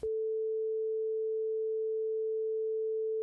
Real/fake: real